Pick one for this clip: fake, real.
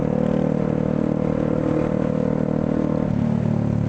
real